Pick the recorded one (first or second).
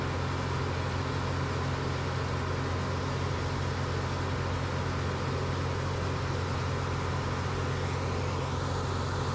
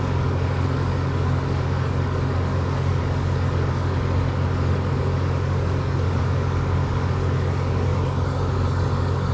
first